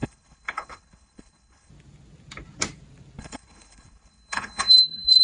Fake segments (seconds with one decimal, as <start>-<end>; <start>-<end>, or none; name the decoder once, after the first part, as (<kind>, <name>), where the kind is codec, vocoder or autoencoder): 0.0-1.7 (codec, HILCodec); 3.2-5.2